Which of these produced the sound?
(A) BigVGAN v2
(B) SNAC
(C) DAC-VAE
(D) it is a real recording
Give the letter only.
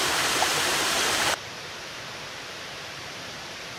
A